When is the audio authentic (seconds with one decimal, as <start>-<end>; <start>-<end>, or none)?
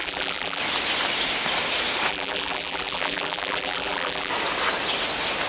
0.6-2.1; 4.3-5.5